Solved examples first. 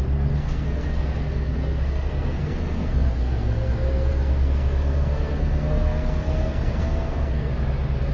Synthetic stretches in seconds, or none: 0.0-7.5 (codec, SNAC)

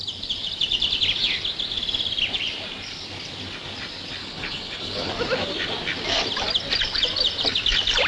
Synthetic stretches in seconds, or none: 4.2-5.1 (codec, HILCodec)

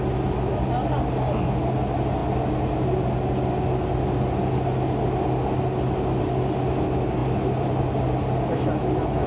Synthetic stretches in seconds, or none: none

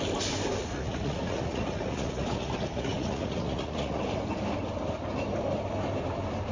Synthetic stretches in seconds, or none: 0.6-4.0 (vocoder, Vocos)